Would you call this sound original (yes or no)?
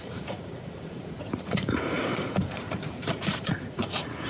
no